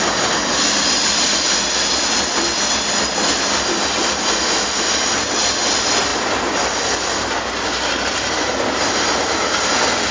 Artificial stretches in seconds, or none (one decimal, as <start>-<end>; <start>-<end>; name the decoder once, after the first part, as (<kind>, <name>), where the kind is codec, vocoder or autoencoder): none